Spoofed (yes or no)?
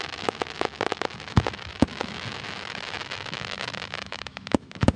yes